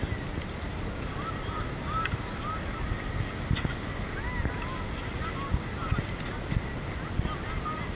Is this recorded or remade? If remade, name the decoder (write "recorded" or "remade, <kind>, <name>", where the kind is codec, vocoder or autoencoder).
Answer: recorded